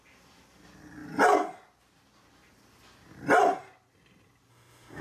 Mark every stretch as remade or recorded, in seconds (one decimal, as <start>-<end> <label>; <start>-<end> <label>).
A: 0.0-4.5 recorded; 4.5-5.0 remade